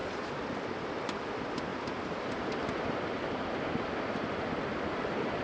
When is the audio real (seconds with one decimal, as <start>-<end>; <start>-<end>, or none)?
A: 0.0-5.4